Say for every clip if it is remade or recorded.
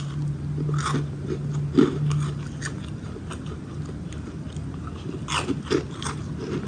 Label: recorded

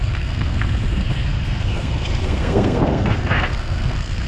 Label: remade